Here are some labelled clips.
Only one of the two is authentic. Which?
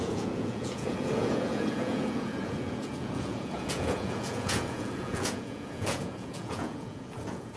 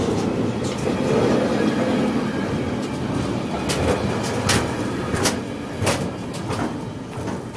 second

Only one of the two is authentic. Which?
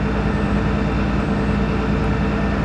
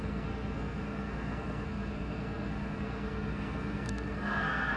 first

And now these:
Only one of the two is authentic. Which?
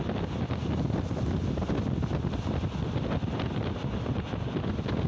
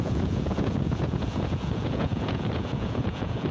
first